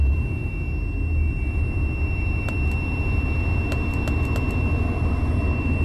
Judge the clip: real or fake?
real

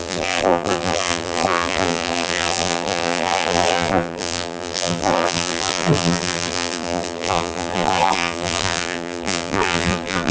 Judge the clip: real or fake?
fake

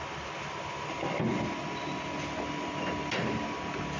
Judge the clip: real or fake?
real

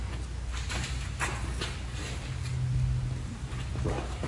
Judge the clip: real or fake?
real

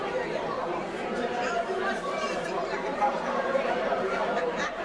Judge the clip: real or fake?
fake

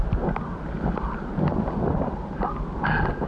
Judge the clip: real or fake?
real